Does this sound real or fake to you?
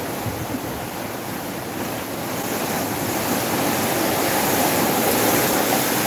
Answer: real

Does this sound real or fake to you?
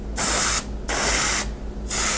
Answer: real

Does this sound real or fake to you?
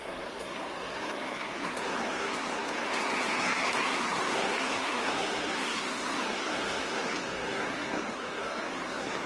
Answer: fake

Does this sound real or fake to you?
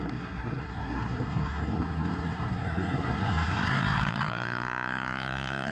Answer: fake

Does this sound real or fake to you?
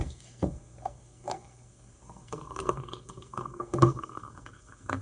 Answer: fake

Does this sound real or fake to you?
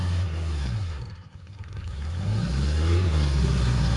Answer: fake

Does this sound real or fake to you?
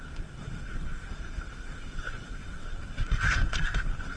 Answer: fake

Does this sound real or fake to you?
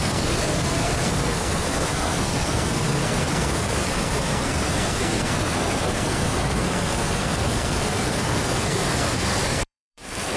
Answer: fake